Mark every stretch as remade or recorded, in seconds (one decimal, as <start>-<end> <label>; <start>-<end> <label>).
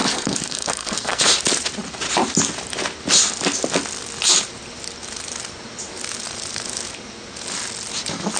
0.0-1.2 remade; 1.2-8.4 recorded